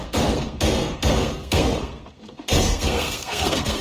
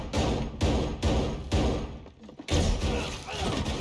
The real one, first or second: second